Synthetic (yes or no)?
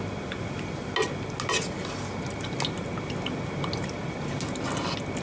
no